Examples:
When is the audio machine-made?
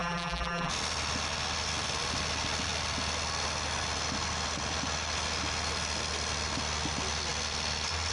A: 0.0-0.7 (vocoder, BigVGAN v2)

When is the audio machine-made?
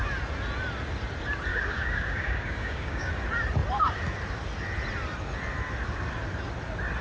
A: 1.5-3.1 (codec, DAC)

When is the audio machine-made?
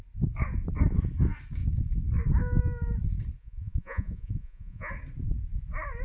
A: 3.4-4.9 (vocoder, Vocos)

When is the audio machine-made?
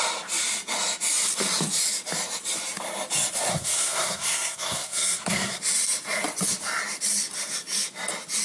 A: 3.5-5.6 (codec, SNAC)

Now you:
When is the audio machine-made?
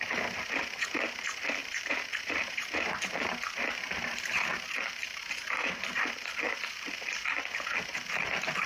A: 1.6-6.1 (vocoder, BigVGAN v2)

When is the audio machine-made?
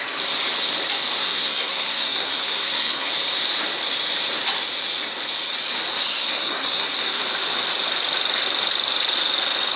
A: 1.2-3.1 (codec, SNAC); 6.0-7.2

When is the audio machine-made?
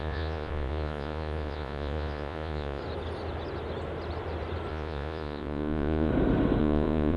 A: 0.0-2.8 (vocoder, Vocos); 4.7-6.1; 6.6-7.2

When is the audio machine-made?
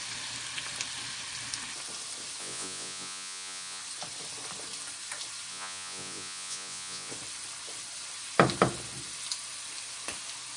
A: 2.4-3.8 (vocoder, Vocos); 5.5-7.1